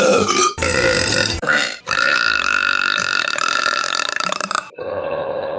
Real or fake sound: fake